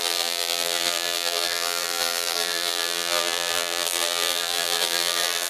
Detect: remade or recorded remade